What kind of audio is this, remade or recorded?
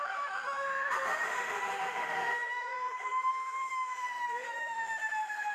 remade